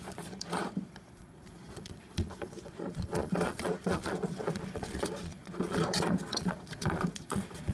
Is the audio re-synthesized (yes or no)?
yes